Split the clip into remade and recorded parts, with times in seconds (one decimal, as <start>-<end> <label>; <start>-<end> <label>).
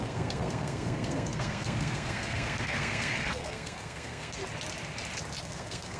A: 0.0-4.4 remade; 4.4-5.4 recorded; 5.4-6.0 remade